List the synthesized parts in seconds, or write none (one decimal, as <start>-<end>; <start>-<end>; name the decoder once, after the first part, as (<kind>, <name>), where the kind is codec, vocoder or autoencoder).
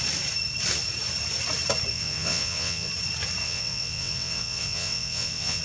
1.9-2.9 (vocoder, WaveNeXt); 3.4-5.6